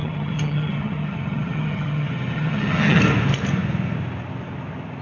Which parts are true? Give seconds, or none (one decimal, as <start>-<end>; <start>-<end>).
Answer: 3.0-5.0